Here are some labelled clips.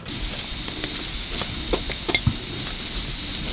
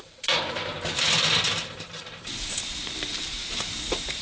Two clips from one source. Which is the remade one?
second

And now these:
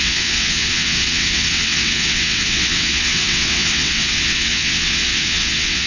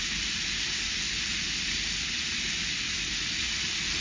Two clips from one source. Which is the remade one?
first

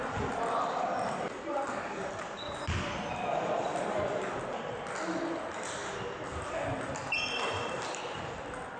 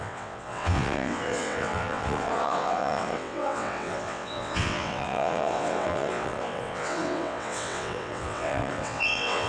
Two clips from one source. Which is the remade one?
second